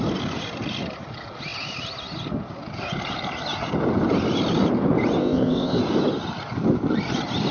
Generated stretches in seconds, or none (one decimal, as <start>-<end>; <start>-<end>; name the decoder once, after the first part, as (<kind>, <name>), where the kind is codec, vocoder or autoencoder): 5.2-5.8 (codec, ZipCodec)